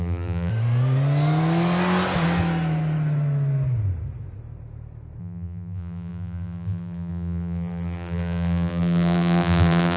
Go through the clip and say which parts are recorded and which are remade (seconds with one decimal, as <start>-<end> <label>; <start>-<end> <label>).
0.0-0.5 remade; 0.5-5.2 recorded; 5.2-10.0 remade